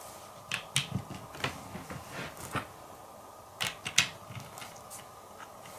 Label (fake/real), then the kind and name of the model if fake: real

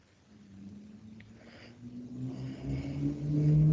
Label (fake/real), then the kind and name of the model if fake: real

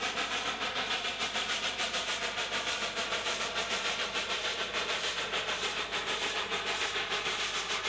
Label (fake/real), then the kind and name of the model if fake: fake, vocoder, BigVGAN v2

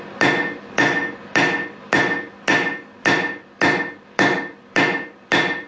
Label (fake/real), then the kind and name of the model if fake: fake, vocoder, BigVGAN v2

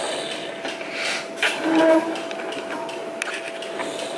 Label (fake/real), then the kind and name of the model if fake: real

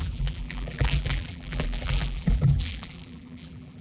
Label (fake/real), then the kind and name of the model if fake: fake, vocoder, BigVGAN v2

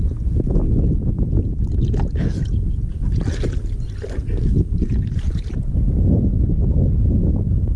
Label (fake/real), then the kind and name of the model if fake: real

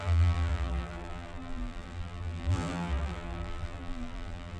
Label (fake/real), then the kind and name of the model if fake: fake, vocoder, BigVGAN v2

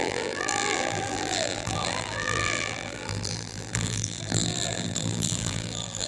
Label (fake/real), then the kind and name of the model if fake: fake, vocoder, BigVGAN v2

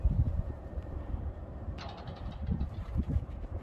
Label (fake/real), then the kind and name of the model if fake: fake, vocoder, BigVGAN v2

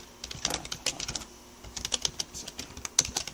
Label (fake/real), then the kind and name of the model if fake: real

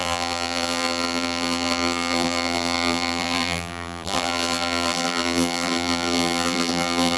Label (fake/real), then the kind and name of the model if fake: fake, vocoder, BigVGAN v2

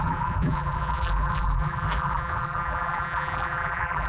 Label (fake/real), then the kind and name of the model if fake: fake, vocoder, BigVGAN v2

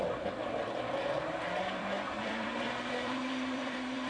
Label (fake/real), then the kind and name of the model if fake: fake, vocoder, BigVGAN v2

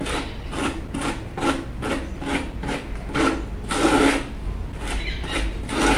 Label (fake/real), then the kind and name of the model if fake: real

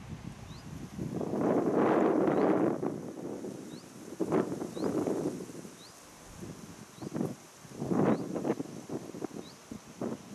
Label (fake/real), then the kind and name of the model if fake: real